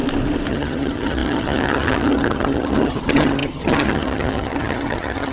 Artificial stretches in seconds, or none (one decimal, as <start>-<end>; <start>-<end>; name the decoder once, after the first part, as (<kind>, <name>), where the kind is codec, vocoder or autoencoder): 0.5-5.3 (vocoder, HiFi-GAN)